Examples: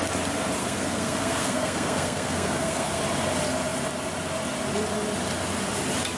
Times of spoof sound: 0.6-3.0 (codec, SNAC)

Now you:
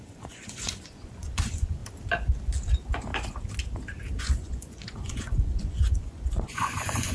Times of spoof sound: 0.0-1.8 (vocoder, Vocos); 2.7-3.1; 4.2-7.1

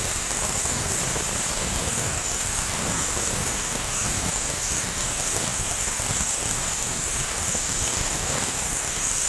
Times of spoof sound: 0.0-1.0 (codec, DAC); 1.5-9.3

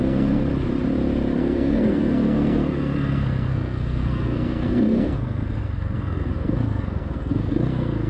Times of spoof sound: 0.0-0.4 (codec, SNAC); 1.4-8.1

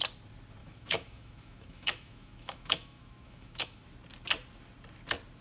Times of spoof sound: 0.6-3.8 (autoencoder, DAC-VAE)

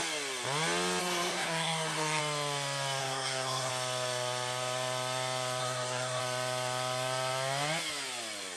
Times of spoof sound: 1.0-2.2 (codec, SNAC); 3.0-3.7; 5.6-6.2